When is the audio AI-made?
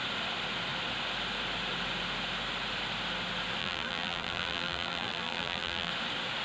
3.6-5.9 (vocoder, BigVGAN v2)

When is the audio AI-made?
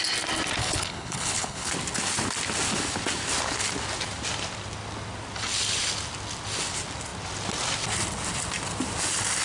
0.6-1.7 (codec, HILCodec)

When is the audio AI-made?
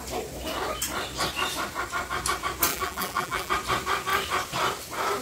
2.7-3.5 (vocoder, BigVGAN v2)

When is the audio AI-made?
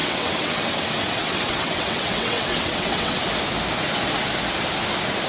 0.0-3.2 (vocoder, WaveNeXt)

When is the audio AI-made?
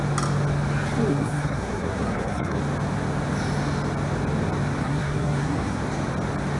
1.1-2.6 (codec, SNAC); 4.8-5.8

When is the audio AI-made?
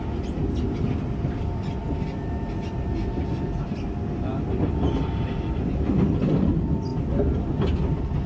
none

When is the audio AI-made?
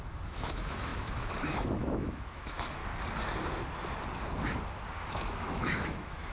0.0-2.8 (autoencoder, DAC-VAE); 5.1-6.3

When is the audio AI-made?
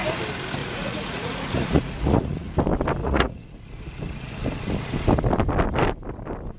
0.6-2.5 (vocoder, Vocos); 3.0-3.6